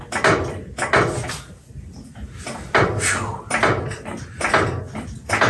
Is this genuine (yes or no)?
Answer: yes